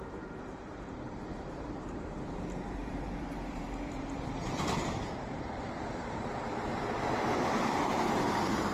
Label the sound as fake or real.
fake